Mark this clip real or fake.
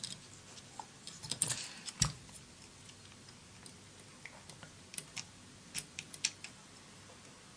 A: real